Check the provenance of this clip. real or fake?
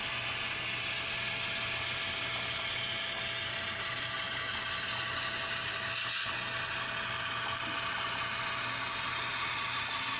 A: real